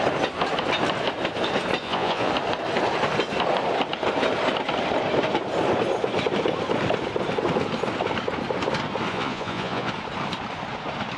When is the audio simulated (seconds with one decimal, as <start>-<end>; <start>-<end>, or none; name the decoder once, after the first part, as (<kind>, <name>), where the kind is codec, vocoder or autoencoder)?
1.8-2.3 (vocoder, Vocos); 9.1-9.9